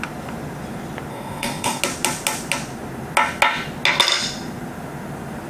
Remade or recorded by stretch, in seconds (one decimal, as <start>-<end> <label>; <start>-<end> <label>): 0.0-1.1 recorded; 1.1-1.8 remade; 1.8-5.5 recorded